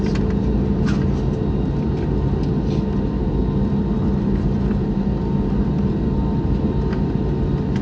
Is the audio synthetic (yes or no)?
no